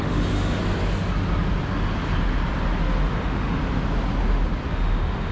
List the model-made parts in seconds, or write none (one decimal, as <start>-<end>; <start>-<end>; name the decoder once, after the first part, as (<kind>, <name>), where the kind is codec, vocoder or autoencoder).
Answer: 0.0-0.6 (autoencoder, DAC-VAE); 3.1-3.6; 4.7-5.3